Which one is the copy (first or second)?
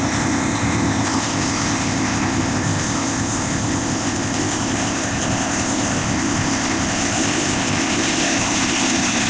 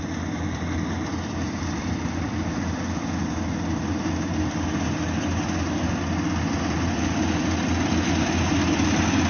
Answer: first